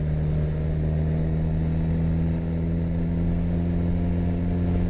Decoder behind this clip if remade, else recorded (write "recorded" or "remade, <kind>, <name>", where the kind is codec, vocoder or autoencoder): recorded